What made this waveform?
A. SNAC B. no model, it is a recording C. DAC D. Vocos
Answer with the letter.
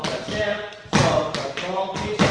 B